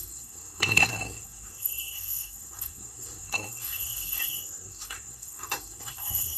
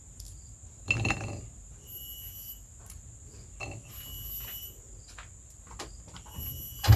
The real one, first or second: second